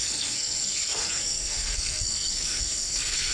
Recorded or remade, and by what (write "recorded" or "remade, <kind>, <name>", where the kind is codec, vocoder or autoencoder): remade, codec, SNAC